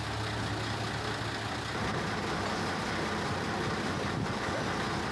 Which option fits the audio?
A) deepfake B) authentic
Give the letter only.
B